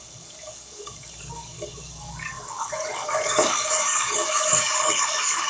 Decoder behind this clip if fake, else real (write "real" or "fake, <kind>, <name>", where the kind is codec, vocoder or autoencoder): fake, codec, DAC